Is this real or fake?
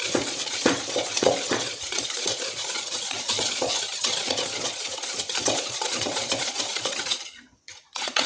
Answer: fake